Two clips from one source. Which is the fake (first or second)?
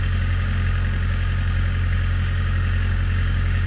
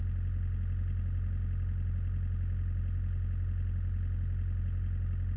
first